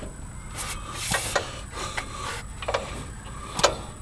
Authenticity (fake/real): real